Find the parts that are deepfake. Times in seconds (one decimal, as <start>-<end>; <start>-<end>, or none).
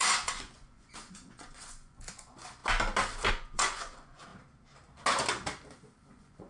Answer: 0.0-2.6; 3.3-4.3; 6.1-6.5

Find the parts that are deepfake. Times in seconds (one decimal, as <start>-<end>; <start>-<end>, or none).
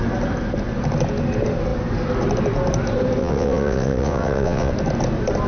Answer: 3.2-4.7